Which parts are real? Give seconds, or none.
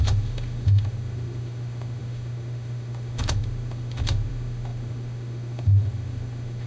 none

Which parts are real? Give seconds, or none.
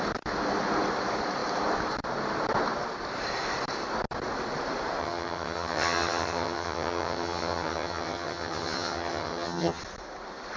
0.0-5.0; 9.8-10.6